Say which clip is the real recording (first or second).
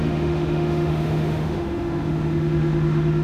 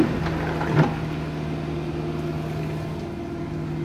second